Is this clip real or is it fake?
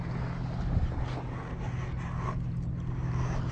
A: real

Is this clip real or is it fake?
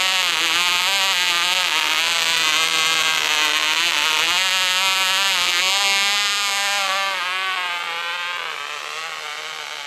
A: real